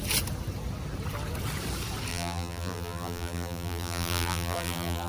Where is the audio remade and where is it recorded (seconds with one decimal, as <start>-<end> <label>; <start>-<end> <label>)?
0.0-2.1 recorded; 2.1-5.1 remade